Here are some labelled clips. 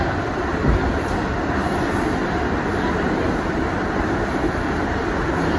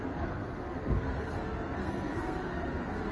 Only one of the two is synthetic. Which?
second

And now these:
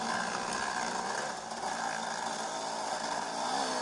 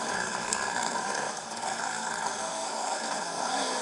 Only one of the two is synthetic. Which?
second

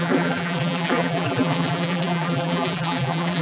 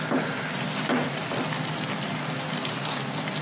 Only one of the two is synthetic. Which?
first